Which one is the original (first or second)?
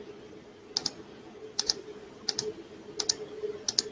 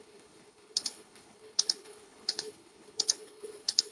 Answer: first